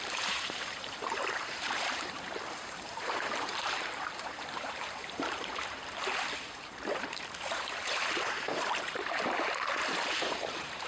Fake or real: fake